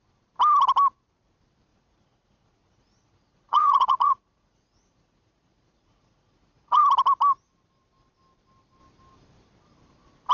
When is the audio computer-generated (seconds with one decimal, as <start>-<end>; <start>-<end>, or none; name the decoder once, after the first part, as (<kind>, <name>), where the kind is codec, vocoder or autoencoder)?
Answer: 1.7-6.8 (vocoder, Vocos)